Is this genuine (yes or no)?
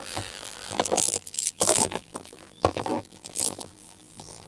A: no